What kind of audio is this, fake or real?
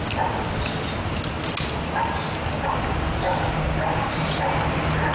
real